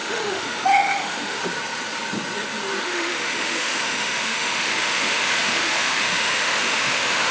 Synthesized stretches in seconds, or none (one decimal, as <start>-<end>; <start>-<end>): 0.0-1.4; 2.8-7.3